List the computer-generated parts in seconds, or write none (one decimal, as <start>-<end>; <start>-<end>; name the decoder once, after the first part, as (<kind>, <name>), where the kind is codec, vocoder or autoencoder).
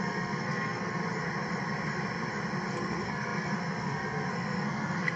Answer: 0.0-1.0 (codec, SNAC); 2.7-5.2